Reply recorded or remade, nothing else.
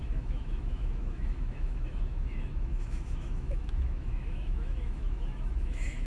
remade